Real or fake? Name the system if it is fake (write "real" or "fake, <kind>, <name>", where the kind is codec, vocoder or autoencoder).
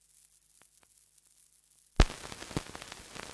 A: real